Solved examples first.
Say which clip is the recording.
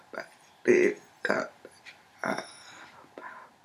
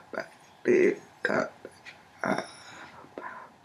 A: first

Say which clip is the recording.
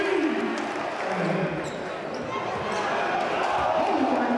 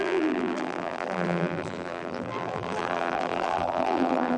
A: first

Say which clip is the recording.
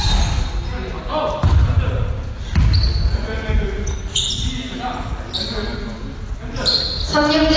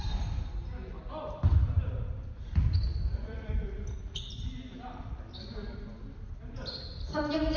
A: first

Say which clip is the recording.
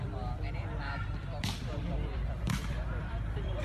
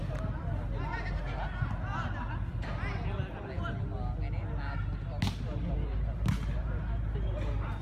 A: second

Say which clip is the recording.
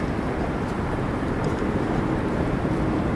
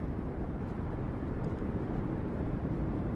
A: first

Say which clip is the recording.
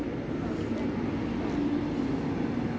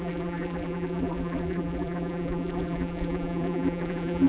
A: first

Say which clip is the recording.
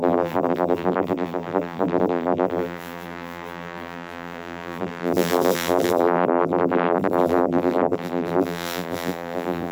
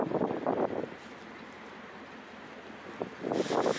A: second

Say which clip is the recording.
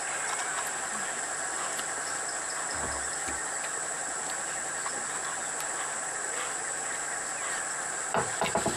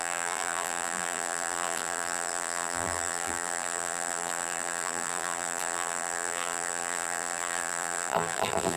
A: first